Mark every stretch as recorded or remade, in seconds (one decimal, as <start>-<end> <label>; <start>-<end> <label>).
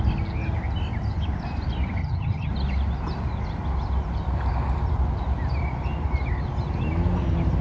0.0-2.0 recorded; 2.0-2.5 remade; 2.5-7.6 recorded